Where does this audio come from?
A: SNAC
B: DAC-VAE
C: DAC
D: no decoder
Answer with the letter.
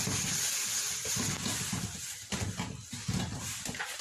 D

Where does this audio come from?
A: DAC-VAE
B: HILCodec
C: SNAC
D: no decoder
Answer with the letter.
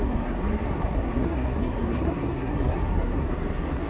C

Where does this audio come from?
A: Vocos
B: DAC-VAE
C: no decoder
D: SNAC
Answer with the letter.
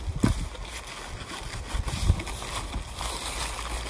C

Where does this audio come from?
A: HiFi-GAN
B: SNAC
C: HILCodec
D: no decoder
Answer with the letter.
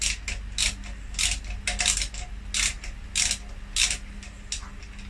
D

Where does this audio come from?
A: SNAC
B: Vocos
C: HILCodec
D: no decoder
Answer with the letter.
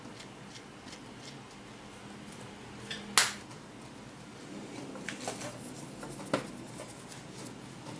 D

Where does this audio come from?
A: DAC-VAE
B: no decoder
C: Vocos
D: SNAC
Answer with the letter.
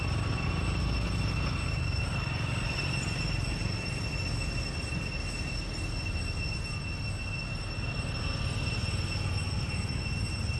B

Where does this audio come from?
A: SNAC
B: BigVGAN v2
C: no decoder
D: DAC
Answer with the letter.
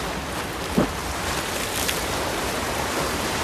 C